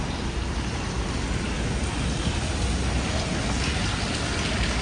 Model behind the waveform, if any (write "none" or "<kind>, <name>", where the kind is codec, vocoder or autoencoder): none